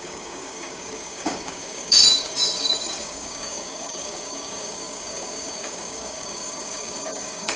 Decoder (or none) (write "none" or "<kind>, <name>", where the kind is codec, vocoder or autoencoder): codec, DAC